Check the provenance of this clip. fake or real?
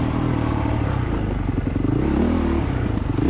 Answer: real